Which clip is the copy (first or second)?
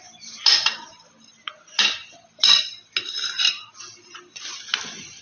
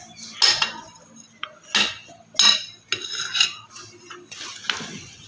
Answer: first